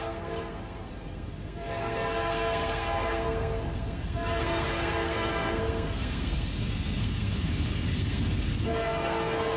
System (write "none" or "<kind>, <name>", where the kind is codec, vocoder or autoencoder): codec, SNAC